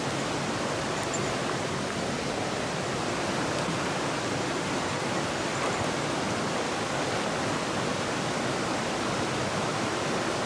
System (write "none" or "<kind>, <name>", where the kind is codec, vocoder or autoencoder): none